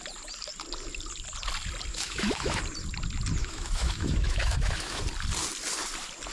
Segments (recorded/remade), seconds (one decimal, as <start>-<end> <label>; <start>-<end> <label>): 0.0-1.9 recorded; 1.9-2.6 remade; 2.6-3.4 recorded; 3.4-5.0 remade; 5.0-6.3 recorded